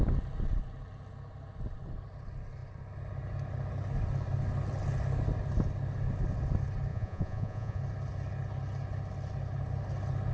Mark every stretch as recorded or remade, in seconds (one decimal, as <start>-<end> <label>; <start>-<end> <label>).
0.0-6.9 recorded; 6.9-7.8 remade; 7.8-10.3 recorded